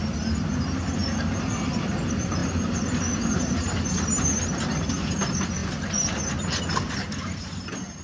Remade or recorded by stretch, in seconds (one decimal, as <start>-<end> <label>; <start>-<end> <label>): 0.0-8.0 recorded